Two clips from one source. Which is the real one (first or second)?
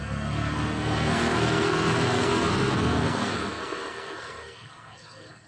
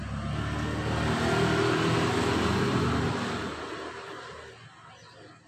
second